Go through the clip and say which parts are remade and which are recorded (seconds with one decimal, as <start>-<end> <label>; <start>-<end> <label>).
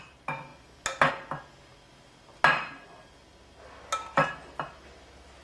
0.0-5.4 recorded